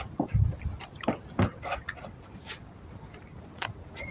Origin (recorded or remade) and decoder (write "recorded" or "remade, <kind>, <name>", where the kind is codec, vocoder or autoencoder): recorded